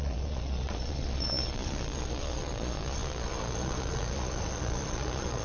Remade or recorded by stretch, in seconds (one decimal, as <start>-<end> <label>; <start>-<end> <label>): 0.0-5.4 remade